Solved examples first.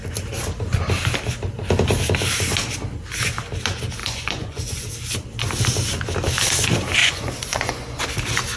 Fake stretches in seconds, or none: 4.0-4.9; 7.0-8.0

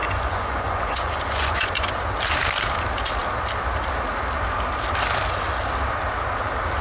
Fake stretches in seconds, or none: 0.0-1.9

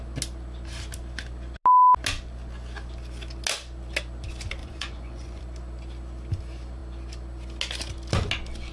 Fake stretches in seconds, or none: 4.6-5.4

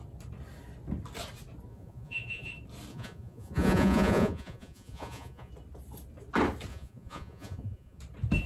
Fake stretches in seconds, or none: 1.7-2.5; 2.9-5.5; 6.7-8.0

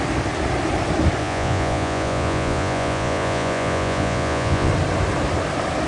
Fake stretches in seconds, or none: 1.2-4.7

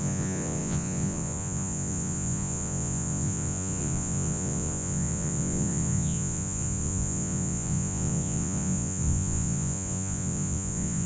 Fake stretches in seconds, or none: 0.0-11.1